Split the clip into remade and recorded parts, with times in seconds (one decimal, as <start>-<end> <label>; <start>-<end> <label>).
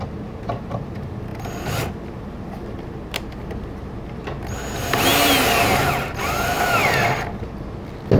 0.0-8.2 recorded